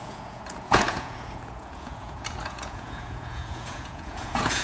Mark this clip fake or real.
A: fake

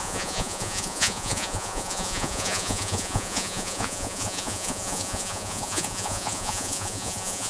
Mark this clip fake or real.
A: fake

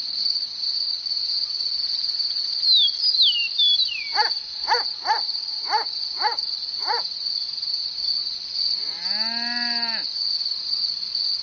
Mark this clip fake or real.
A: real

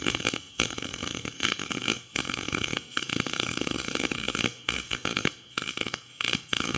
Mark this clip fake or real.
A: fake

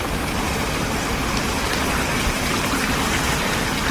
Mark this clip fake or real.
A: real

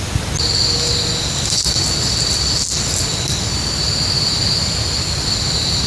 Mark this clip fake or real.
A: real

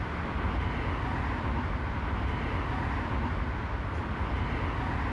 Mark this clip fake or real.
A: real